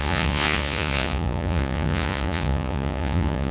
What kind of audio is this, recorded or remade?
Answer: remade